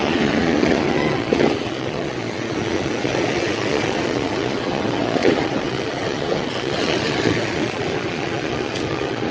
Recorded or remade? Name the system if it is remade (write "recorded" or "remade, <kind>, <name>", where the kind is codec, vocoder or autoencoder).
remade, vocoder, Vocos